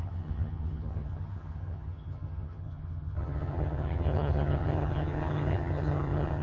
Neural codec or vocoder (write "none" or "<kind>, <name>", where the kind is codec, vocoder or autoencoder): vocoder, HiFi-GAN